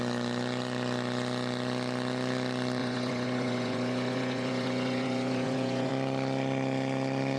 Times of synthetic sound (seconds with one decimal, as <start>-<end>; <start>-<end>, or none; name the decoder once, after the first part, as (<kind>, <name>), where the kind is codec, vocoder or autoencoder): 2.8-5.9 (vocoder, Vocos)